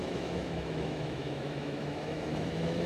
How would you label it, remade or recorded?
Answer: remade